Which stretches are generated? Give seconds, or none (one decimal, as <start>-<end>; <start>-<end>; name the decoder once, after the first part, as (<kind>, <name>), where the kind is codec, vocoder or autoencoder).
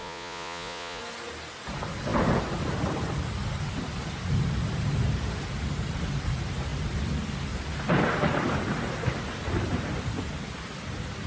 0.0-1.0 (vocoder, Vocos)